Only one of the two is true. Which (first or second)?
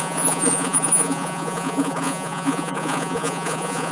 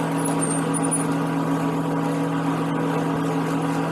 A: second